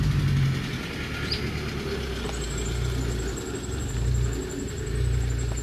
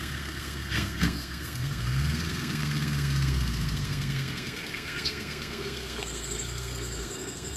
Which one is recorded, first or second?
first